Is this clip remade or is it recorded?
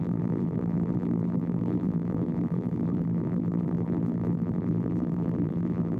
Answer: remade